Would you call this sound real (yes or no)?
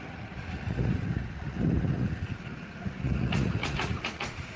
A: no